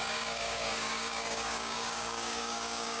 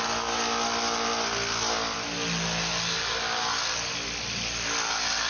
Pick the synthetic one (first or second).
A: first